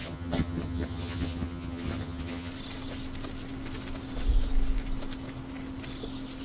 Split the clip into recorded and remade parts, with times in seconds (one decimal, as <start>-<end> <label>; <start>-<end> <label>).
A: 0.0-2.5 remade; 2.5-6.4 recorded